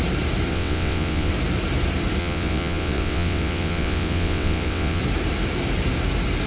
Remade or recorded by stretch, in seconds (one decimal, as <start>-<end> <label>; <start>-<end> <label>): 0.0-0.5 recorded; 0.5-1.3 remade; 1.3-2.2 recorded; 2.2-5.0 remade; 5.0-6.5 recorded